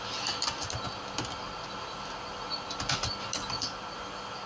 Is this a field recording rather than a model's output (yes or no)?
yes